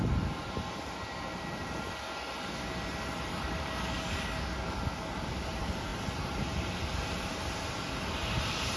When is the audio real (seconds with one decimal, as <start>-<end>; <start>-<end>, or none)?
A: 0.0-3.3; 4.8-8.8